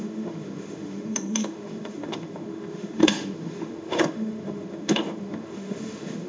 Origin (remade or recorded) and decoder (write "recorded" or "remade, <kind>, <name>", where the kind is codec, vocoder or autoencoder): remade, autoencoder, DAC-VAE